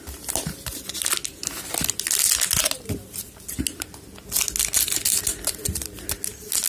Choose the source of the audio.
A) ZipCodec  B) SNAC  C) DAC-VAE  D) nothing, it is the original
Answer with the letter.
D